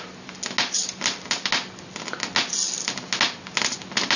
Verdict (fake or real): real